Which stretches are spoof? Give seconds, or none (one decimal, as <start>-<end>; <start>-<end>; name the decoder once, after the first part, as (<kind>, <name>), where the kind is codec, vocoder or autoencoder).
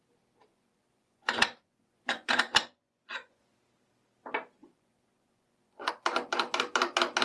0.5-3.6 (vocoder, Vocos); 4.6-5.9